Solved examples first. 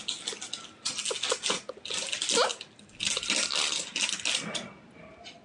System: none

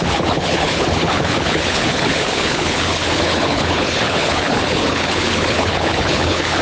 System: codec, HILCodec